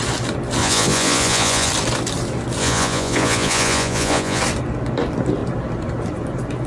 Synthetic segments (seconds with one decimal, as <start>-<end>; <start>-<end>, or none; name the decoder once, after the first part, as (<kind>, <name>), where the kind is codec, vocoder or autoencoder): 0.6-1.7 (vocoder, Vocos); 2.6-4.4